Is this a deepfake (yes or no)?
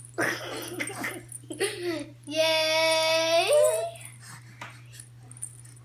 no